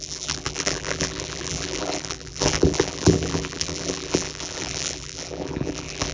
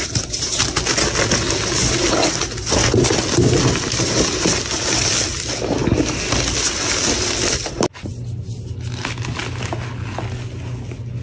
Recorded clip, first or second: second